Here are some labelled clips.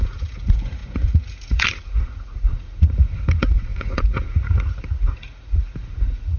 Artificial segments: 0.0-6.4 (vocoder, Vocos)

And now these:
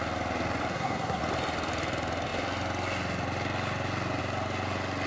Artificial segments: 0.7-1.2 (codec, SNAC)

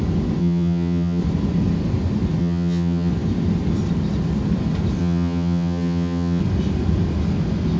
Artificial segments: 0.4-1.2 (vocoder, HiFi-GAN); 2.4-3.1; 5.0-6.4

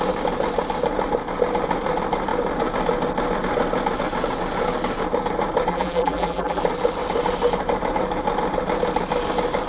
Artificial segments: 5.7-6.6 (vocoder, BigVGAN v2)